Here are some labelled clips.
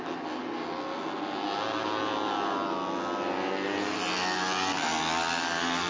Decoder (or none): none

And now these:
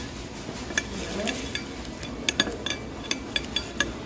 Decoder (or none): none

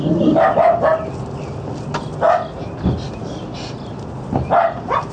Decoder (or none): none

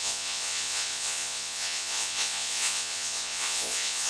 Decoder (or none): vocoder, Vocos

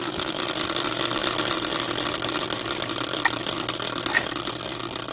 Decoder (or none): none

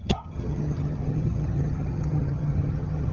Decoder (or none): vocoder, HiFi-GAN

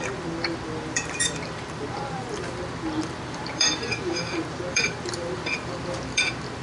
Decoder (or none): vocoder, BigVGAN v2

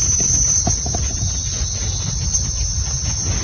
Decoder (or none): none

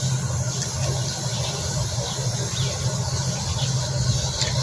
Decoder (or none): none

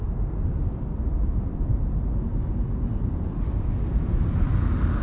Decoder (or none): none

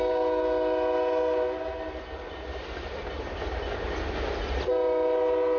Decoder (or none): none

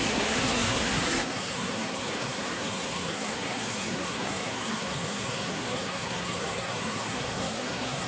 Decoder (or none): codec, SNAC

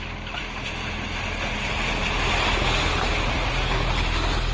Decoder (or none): none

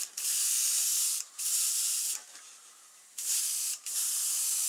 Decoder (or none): vocoder, BigVGAN v2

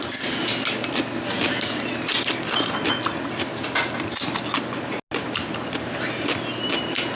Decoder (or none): none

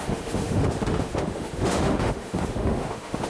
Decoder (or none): autoencoder, DAC-VAE